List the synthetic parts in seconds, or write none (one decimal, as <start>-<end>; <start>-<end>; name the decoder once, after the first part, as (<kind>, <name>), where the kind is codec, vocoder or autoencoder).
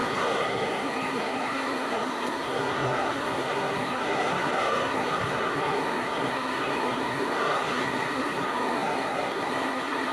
0.0-10.1 (codec, SNAC)